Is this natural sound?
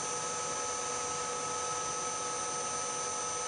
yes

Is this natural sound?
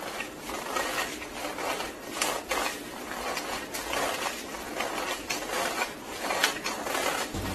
yes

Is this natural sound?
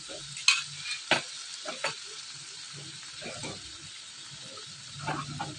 yes